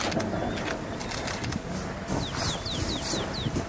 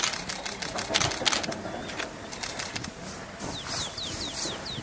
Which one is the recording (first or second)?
first